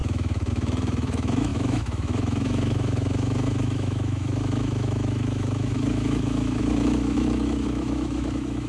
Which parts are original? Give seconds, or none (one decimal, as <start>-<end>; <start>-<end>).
none